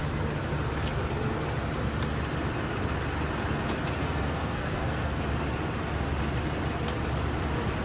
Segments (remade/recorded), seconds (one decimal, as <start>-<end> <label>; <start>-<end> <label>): 0.0-4.0 recorded; 4.0-5.2 remade; 5.2-7.8 recorded